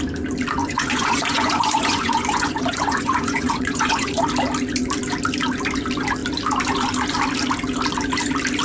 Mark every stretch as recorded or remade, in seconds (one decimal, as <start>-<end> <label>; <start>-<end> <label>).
0.0-0.6 recorded; 0.6-4.2 remade; 4.2-8.6 recorded